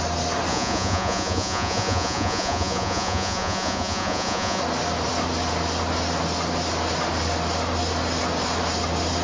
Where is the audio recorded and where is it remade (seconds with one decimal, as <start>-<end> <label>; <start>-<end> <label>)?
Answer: 0.0-0.5 recorded; 0.5-4.6 remade; 4.6-9.2 recorded